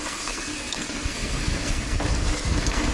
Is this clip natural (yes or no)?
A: no